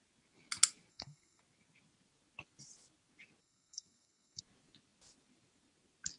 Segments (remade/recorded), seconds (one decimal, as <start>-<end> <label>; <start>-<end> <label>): 0.0-0.9 recorded; 0.9-1.4 remade; 1.4-3.4 recorded; 3.4-4.4 remade; 4.4-6.2 recorded